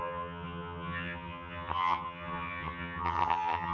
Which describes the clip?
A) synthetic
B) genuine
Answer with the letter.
A